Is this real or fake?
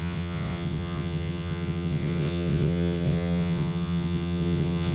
fake